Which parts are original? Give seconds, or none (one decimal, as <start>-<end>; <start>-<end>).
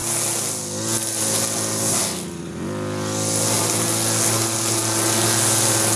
0.0-6.0